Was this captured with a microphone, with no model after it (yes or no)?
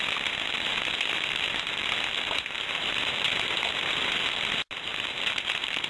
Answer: yes